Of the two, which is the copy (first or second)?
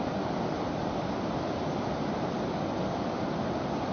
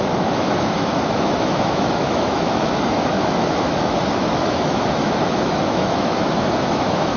second